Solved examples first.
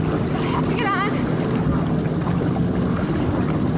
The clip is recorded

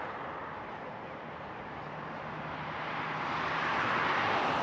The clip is recorded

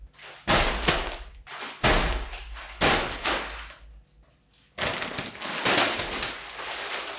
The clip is recorded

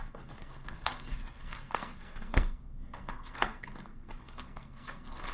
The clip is remade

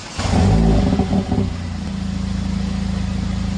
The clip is recorded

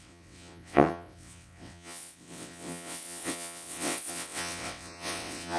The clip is remade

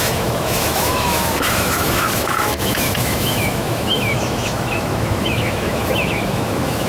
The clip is remade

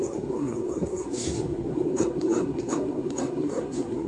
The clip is remade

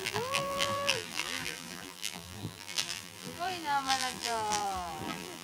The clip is remade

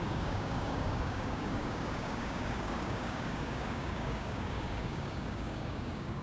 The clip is remade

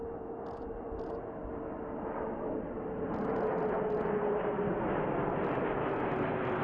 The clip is recorded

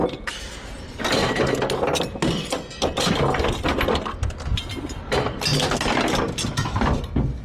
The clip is recorded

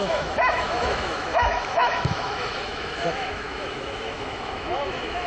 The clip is remade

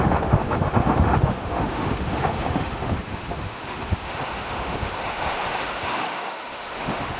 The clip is remade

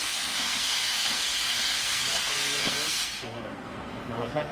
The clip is remade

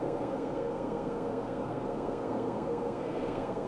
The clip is remade